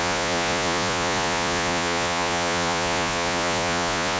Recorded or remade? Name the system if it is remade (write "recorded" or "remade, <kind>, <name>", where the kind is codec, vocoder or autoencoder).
remade, vocoder, Vocos